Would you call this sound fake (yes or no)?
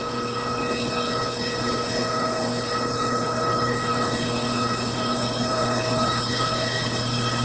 yes